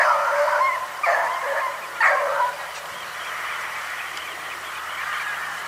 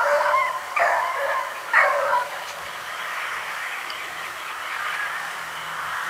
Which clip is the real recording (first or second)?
first